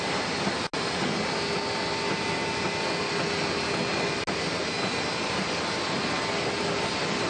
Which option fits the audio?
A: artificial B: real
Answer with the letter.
B